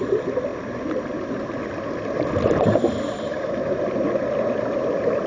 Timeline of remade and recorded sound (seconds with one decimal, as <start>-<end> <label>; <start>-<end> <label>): 0.0-5.3 recorded